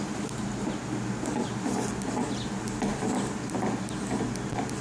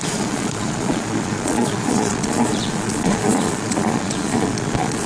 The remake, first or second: second